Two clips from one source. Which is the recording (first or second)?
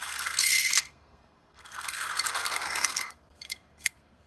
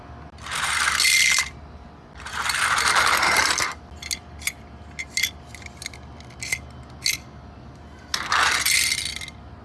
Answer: second